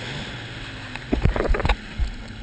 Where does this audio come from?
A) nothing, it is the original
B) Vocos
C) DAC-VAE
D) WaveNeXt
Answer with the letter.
A